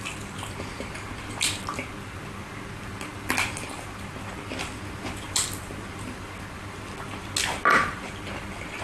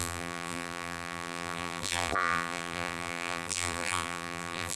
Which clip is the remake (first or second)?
second